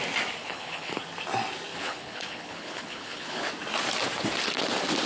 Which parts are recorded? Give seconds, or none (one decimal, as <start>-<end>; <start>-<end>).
0.0-0.4; 1.0-1.7; 3.5-5.1